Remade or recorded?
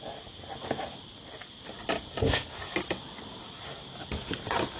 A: recorded